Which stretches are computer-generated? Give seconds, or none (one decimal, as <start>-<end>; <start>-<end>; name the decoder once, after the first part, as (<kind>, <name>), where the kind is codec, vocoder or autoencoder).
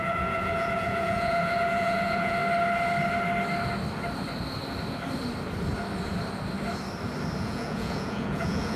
0.0-2.4 (vocoder, Vocos); 7.4-8.8